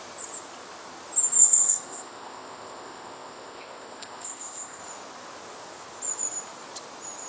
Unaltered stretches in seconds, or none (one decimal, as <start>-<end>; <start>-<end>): 0.0-1.4; 4.8-7.3